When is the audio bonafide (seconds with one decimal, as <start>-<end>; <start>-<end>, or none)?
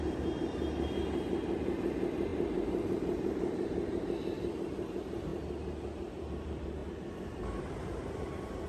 5.3-6.2; 6.8-7.6